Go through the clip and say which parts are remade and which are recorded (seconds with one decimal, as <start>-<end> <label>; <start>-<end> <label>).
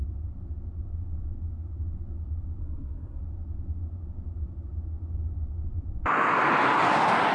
0.0-2.6 recorded; 2.6-3.2 remade; 3.2-7.3 recorded